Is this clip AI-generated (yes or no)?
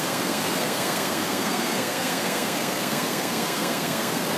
yes